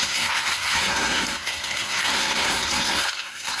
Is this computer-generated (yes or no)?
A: yes